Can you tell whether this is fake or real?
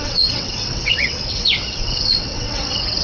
fake